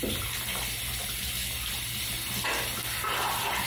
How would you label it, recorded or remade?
recorded